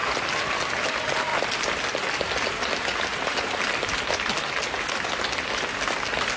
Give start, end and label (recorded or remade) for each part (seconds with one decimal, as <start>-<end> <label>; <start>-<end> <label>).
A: 0.0-6.4 recorded